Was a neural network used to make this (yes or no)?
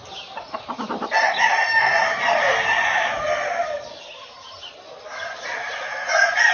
no